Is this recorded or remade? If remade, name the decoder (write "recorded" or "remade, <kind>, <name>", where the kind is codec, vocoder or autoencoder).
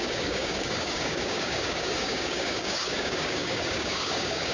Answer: remade, codec, DAC